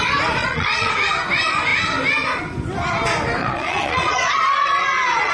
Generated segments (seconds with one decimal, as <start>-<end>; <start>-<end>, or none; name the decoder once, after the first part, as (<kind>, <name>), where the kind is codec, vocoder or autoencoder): 0.4-0.9 (vocoder, Vocos); 3.4-5.3